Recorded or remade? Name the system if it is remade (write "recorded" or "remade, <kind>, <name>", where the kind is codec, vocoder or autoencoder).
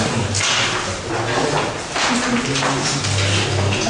recorded